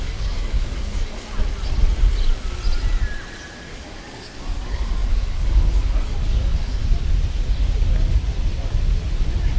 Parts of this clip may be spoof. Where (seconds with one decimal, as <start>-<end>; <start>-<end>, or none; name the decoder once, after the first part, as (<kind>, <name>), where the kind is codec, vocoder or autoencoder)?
0.0-1.4 (codec, DAC); 3.6-6.8